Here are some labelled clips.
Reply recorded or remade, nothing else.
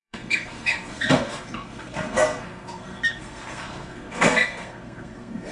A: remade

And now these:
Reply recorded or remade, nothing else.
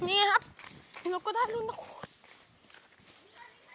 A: recorded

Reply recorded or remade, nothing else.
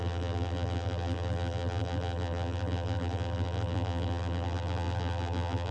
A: remade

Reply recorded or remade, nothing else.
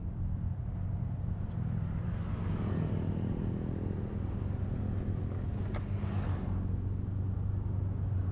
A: recorded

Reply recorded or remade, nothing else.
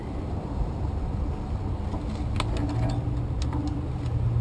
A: recorded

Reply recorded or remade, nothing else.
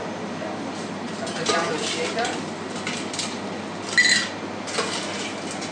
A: recorded